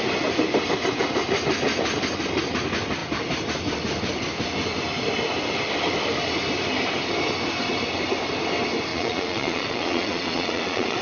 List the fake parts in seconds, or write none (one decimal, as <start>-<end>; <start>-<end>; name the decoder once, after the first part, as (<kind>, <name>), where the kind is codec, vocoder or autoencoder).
8.9-11.0 (vocoder, Vocos)